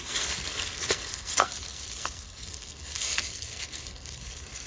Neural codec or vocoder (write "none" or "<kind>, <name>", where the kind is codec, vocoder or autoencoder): codec, SNAC